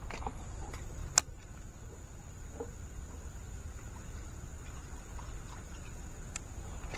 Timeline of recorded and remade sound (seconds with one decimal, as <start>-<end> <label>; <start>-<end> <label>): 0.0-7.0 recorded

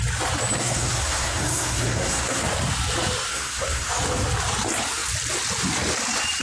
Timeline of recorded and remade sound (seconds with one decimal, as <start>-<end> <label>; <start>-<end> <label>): 0.0-0.6 recorded; 0.6-2.4 remade; 2.4-3.3 recorded; 3.3-3.9 remade; 3.9-6.4 recorded

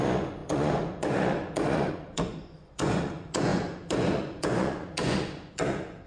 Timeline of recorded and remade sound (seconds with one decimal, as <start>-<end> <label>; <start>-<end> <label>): 0.0-6.1 remade